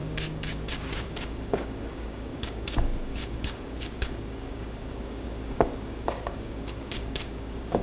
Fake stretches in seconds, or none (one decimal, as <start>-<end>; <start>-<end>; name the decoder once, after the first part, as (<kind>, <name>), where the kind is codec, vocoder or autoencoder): 0.0-7.8 (codec, DAC)